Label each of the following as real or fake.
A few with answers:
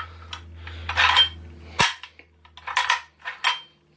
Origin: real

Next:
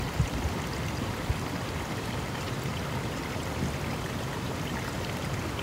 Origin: real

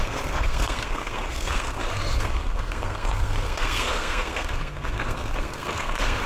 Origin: fake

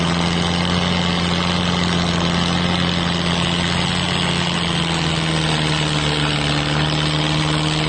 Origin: real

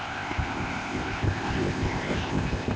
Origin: fake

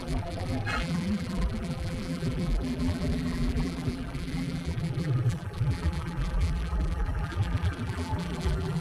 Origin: fake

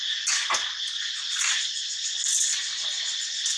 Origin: real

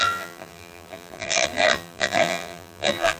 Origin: fake